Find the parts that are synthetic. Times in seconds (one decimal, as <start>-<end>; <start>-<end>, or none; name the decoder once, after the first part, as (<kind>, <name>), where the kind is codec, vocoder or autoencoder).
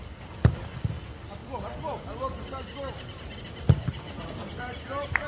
none